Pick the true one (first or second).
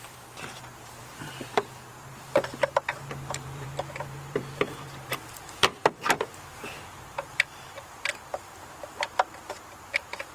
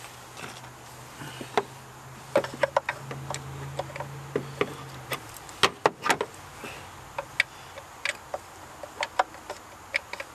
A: second